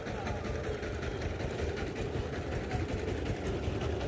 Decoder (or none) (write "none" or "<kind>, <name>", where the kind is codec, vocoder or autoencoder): vocoder, BigVGAN v2